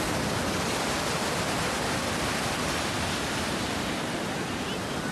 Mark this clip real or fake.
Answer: real